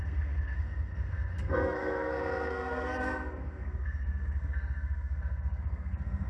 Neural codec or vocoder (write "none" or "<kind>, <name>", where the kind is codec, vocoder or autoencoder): codec, SNAC